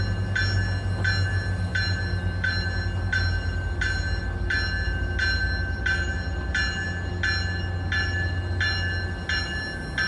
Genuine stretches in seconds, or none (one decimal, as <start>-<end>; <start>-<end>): 0.0-10.1